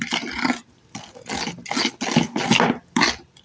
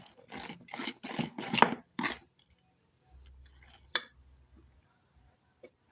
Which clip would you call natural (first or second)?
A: first